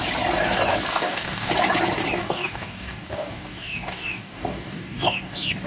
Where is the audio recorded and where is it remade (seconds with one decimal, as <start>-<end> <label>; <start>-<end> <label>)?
0.0-0.9 recorded; 0.9-1.5 remade; 1.5-2.2 recorded; 2.2-5.7 remade